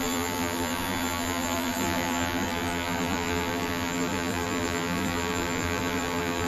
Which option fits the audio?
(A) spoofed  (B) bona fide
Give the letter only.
A